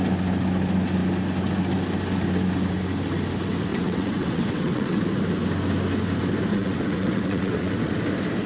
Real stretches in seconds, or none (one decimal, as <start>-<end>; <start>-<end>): 0.0-3.7; 5.0-6.5; 7.9-8.5